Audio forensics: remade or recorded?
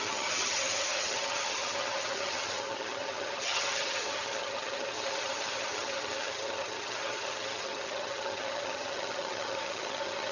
remade